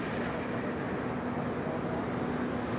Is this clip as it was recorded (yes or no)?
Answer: yes